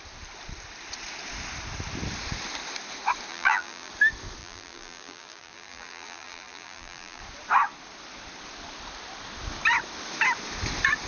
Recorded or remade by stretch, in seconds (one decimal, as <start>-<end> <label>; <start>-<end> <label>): 0.0-3.3 recorded; 3.3-3.9 remade; 3.9-4.4 recorded; 4.4-7.2 remade; 7.2-11.1 recorded